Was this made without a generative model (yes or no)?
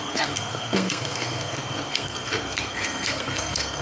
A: no